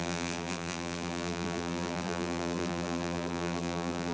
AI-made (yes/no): yes